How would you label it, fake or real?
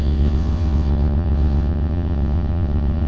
fake